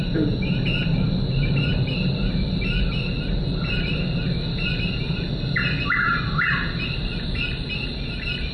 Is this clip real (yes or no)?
yes